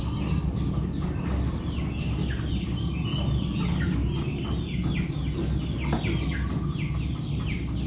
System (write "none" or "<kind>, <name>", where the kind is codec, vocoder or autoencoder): none